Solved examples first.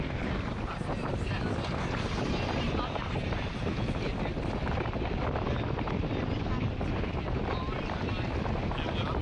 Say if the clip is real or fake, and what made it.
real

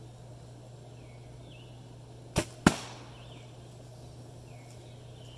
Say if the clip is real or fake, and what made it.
real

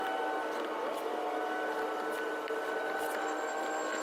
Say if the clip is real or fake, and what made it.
real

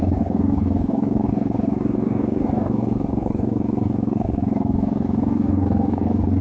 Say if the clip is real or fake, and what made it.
fake, codec, DAC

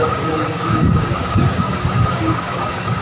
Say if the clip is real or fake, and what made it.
fake, codec, DAC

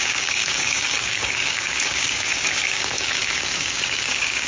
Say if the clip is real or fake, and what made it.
fake, codec, DAC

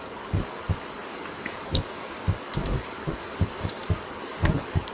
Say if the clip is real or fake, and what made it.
fake, codec, DAC